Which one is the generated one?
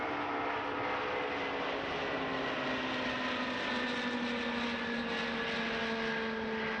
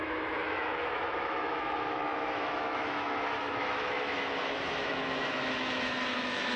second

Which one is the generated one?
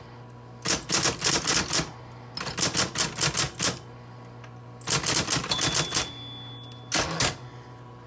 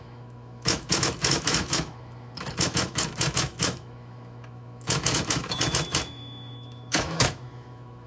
second